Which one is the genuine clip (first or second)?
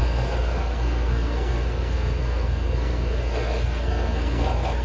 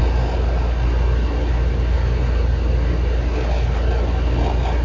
second